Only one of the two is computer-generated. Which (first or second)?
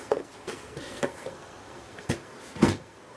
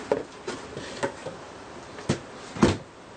first